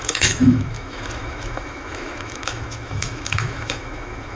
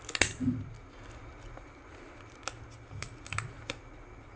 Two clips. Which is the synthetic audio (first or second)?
first